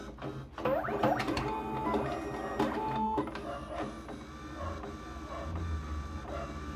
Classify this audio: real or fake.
real